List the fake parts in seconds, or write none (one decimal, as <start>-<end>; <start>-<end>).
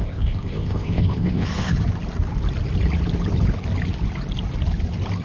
0.0-1.7